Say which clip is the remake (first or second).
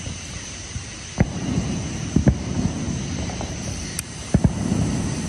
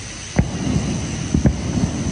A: first